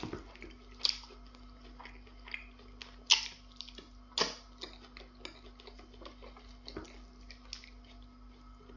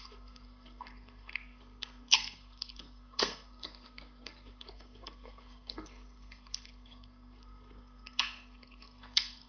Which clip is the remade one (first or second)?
second